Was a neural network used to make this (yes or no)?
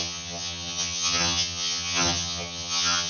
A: yes